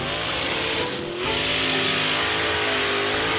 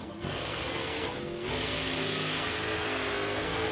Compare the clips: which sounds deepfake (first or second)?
second